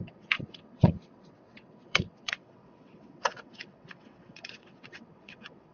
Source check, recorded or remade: remade